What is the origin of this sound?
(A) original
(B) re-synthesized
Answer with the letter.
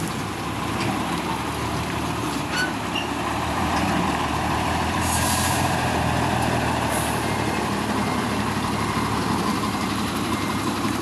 B